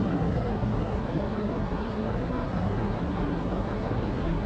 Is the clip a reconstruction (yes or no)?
yes